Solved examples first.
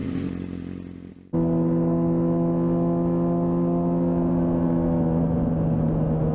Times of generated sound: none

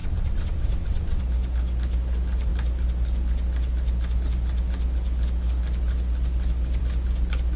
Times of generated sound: 0.0-1.2 (vocoder, WaveNeXt)

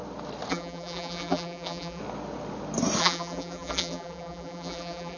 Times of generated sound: 0.5-2.0 (vocoder, BigVGAN v2); 3.0-5.2

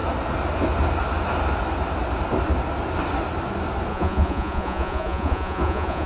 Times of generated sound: 3.9-6.1 (vocoder, Vocos)

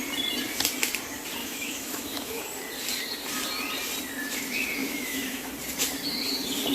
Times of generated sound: 1.4-2.4 (autoencoder, DAC-VAE); 4.8-5.5